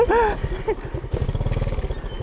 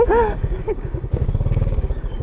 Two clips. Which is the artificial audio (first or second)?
second